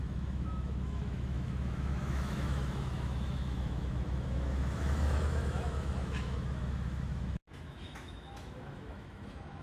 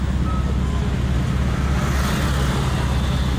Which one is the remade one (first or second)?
first